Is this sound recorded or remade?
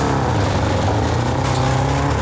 recorded